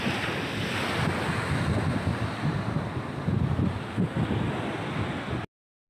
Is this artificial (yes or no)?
no